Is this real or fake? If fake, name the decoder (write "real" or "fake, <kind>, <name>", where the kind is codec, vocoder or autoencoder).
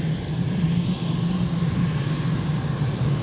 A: real